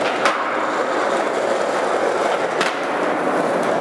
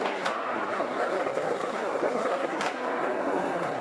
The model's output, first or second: second